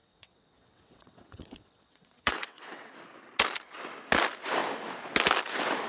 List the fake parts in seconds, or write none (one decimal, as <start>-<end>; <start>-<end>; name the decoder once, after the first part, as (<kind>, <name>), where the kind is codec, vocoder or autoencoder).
0.0-2.9 (vocoder, WaveNeXt)

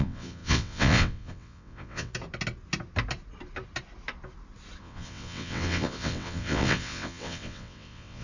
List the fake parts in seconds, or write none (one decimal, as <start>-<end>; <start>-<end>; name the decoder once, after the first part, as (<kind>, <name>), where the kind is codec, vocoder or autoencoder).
0.0-2.1 (vocoder, WaveNeXt); 4.8-8.2